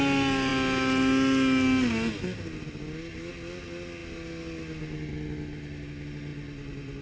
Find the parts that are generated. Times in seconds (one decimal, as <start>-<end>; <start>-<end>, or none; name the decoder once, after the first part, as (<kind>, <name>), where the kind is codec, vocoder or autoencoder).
none